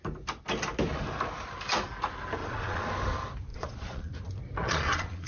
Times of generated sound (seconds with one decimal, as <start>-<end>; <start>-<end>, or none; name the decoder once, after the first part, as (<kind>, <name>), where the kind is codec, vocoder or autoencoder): 2.4-2.9 (vocoder, Vocos); 3.5-4.1; 4.6-5.3